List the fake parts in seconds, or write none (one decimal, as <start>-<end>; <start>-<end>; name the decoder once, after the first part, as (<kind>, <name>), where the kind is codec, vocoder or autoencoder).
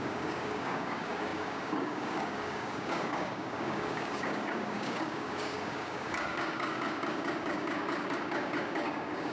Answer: 0.0-9.3 (codec, DAC)